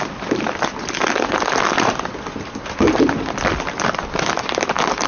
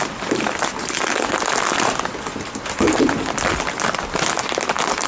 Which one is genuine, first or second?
second